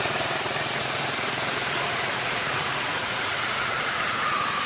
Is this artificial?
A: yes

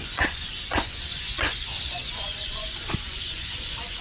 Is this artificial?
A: yes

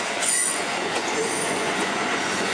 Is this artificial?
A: yes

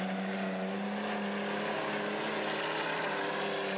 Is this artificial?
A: no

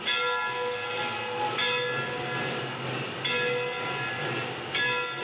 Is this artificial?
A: no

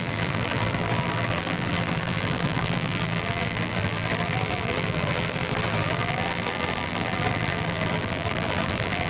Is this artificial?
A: yes